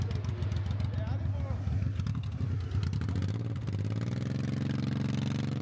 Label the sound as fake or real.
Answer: real